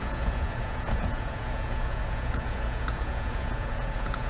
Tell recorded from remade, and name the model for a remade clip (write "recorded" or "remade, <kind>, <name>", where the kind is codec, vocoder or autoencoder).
remade, vocoder, Vocos